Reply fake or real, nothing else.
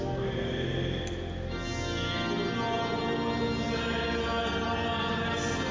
real